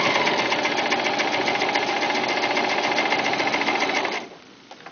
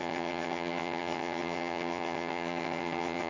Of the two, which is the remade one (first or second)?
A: second